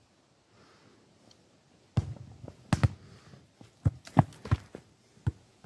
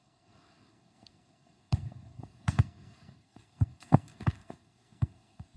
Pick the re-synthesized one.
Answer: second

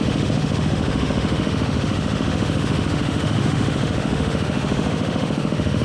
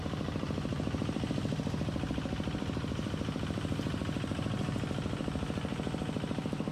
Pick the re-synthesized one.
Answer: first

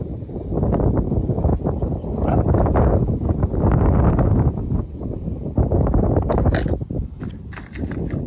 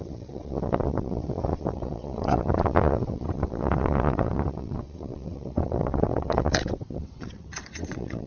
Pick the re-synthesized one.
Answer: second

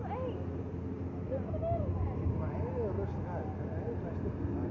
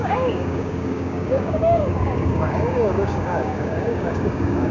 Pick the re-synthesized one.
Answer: second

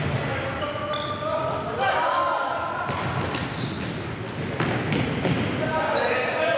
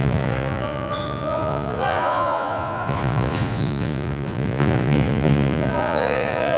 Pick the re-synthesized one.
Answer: second